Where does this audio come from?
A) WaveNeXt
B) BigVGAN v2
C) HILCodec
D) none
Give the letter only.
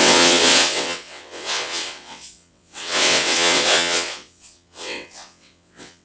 A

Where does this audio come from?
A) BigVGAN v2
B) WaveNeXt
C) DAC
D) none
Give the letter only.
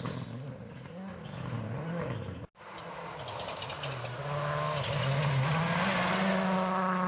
D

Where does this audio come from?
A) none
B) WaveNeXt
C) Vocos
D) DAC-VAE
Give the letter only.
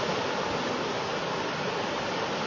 A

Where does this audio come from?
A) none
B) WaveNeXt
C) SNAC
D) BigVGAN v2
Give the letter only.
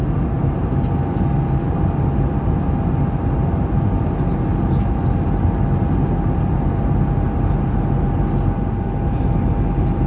A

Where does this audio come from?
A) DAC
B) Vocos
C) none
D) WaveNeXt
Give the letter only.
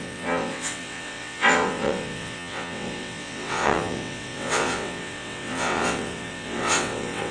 D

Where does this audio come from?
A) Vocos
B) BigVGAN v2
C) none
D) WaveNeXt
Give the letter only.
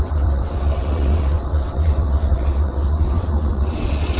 D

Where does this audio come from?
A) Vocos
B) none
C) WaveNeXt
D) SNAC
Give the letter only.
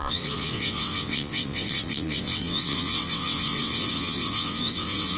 C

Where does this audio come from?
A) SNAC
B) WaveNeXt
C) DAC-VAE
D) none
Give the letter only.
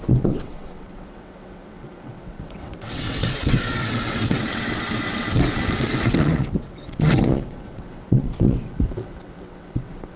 B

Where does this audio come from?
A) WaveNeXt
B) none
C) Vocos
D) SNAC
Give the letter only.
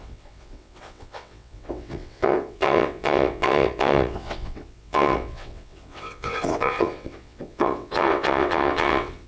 A